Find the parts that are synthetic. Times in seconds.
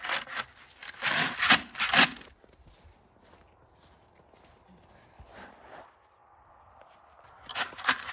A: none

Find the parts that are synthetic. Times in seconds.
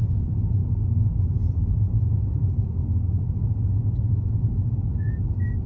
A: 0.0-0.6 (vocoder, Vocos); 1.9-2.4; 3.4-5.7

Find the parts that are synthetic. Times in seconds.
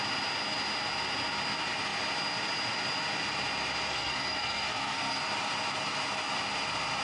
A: 3.9-5.2 (codec, SNAC)